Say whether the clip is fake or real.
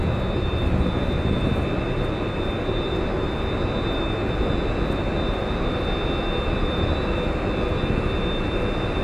real